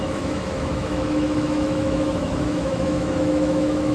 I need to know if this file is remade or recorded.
remade